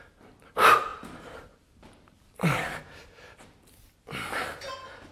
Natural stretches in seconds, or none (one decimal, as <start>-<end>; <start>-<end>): 0.0-5.1